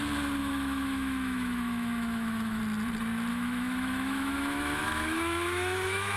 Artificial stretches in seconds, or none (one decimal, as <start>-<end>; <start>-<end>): 0.4-2.6; 3.3-6.2